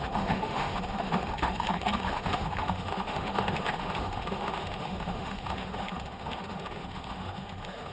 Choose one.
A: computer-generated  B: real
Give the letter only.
A